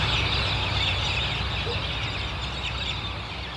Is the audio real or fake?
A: real